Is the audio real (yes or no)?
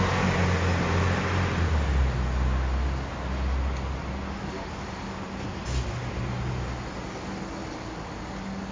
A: yes